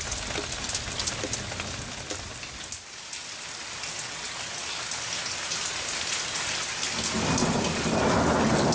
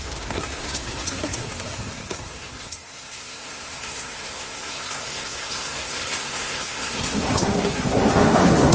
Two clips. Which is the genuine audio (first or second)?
first